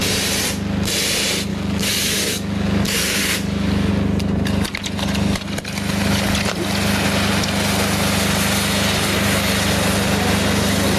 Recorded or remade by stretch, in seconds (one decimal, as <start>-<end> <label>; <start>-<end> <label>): 0.0-1.5 recorded; 1.5-3.9 remade; 3.9-11.0 recorded